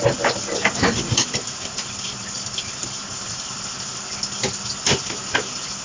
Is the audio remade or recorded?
recorded